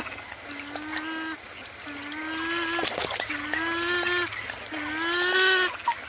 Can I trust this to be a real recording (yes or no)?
yes